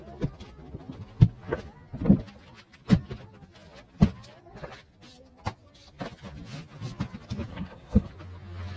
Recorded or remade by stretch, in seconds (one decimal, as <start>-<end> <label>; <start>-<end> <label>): 0.0-7.5 recorded; 7.5-8.1 remade; 8.1-8.8 recorded